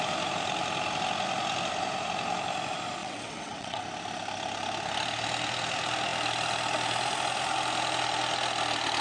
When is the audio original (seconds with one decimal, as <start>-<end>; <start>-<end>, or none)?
0.0-3.0; 3.8-9.0